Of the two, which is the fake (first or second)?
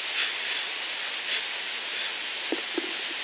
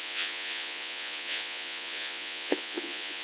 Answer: second